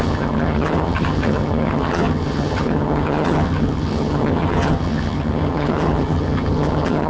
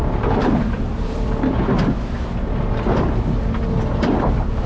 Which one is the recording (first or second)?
second